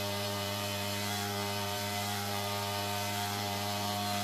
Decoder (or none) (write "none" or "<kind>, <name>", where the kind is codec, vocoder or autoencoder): vocoder, BigVGAN v2